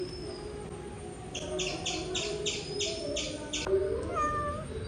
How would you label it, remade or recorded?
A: recorded